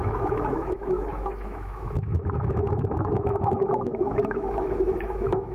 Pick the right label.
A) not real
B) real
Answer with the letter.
A